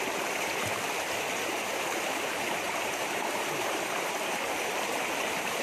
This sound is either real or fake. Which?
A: real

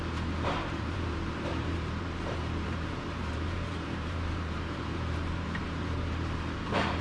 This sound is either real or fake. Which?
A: fake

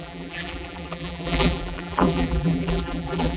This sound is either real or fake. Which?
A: fake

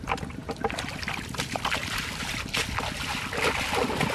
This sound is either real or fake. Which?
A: real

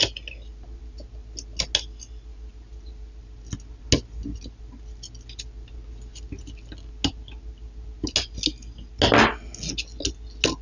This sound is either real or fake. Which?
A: real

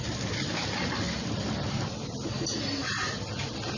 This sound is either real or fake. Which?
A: fake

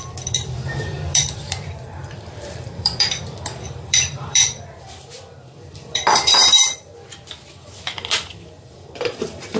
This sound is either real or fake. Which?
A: fake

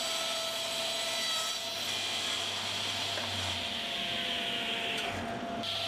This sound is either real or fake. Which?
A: real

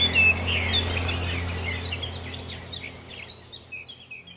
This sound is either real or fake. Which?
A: real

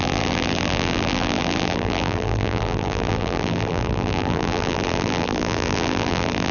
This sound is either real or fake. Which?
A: fake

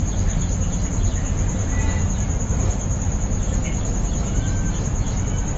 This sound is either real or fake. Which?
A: fake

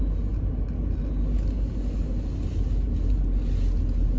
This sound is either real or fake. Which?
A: real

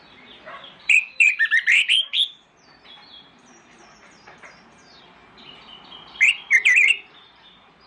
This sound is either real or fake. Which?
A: fake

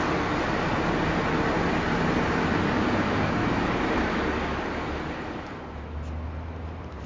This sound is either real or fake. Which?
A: real